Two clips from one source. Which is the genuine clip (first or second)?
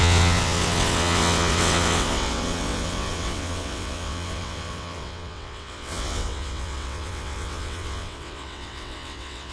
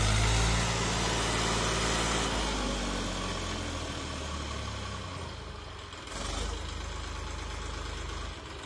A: second